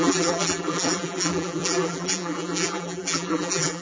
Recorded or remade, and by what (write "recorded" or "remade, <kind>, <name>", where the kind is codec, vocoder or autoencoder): remade, vocoder, BigVGAN v2